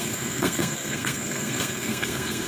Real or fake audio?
fake